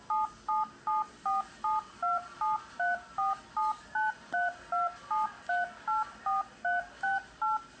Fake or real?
real